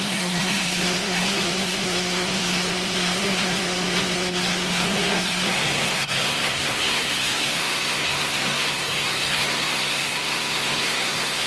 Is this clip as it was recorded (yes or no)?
no